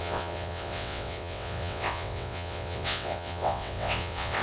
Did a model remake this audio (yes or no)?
yes